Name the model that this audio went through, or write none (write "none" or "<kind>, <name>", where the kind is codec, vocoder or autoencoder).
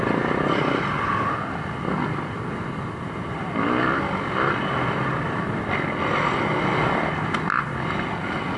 none